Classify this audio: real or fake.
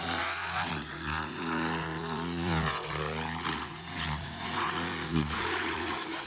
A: fake